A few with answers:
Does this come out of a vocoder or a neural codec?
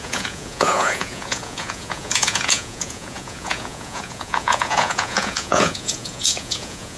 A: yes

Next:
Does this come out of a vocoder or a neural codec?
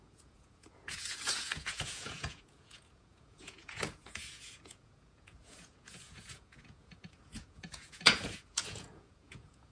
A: yes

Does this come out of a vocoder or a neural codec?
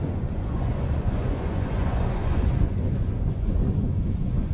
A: yes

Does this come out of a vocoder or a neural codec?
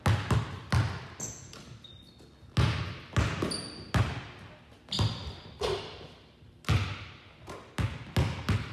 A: no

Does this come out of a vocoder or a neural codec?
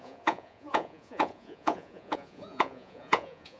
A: yes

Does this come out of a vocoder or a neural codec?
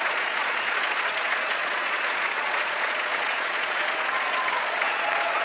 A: yes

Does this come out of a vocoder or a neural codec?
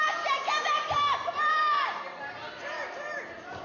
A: no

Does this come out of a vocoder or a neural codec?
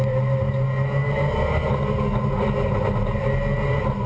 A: no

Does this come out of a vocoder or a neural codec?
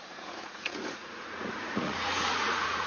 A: yes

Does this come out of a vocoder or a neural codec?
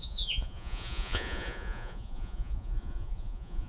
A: yes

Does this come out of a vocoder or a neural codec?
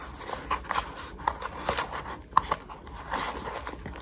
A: no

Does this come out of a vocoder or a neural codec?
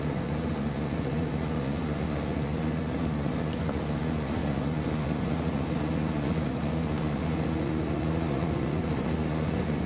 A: yes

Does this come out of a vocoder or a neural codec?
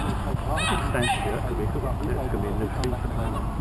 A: no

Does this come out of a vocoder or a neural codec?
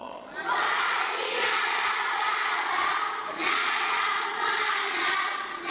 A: yes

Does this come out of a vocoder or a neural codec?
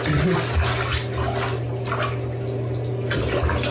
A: no